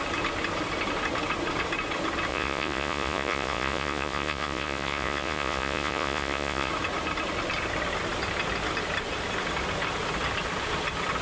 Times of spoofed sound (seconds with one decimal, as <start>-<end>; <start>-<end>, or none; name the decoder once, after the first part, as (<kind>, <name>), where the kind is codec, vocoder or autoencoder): 2.3-6.7 (vocoder, Vocos)